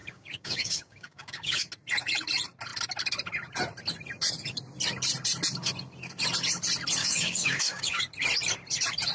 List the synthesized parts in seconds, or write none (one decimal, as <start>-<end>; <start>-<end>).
0.0-1.7; 7.0-8.0